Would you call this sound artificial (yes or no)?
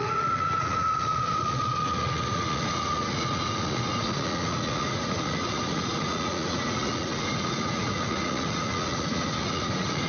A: yes